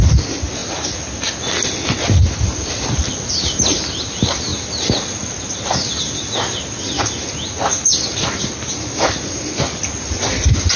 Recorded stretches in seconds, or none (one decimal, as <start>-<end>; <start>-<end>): 0.0-10.8